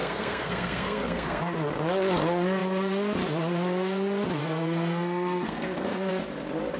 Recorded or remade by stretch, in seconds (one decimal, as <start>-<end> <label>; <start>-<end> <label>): 0.0-1.4 remade; 1.4-4.4 recorded; 4.4-6.1 remade; 6.1-6.8 recorded